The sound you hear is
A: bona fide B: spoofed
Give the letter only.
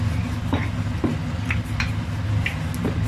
A